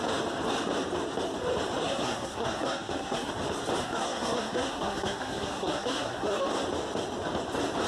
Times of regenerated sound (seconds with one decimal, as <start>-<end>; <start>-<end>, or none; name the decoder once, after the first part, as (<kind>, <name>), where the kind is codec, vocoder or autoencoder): 1.8-3.3 (codec, SNAC); 3.8-6.4